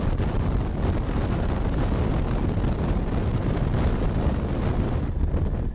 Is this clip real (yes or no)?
yes